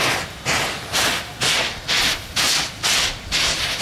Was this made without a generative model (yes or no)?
yes